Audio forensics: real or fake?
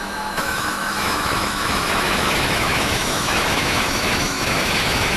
fake